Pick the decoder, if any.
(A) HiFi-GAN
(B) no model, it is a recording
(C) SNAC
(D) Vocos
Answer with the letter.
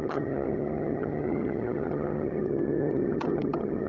A